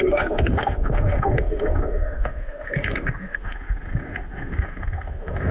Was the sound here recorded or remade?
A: remade